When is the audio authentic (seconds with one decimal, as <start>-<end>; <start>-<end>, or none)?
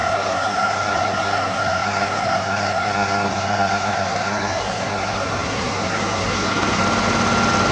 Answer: 6.8-7.7